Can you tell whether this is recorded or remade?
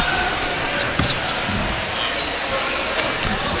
recorded